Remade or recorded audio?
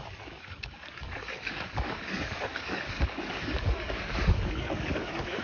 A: remade